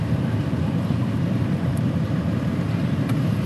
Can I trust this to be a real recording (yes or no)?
no